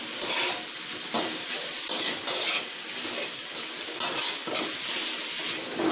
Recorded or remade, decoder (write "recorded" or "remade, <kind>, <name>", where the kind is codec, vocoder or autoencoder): recorded